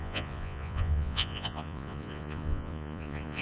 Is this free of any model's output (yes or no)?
no